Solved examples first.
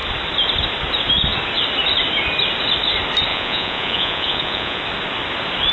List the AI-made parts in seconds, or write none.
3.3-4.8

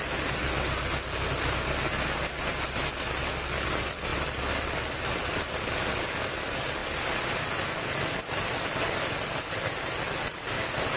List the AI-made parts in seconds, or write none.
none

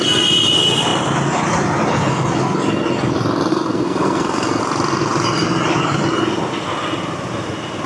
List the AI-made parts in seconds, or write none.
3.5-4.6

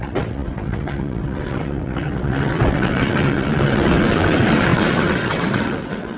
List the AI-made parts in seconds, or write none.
0.0-6.2

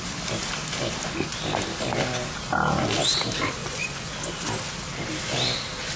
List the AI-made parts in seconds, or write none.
3.6-4.1

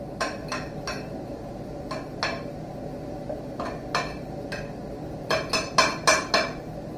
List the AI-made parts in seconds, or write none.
none